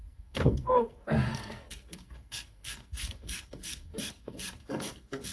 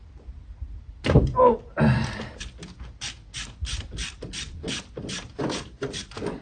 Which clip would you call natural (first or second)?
second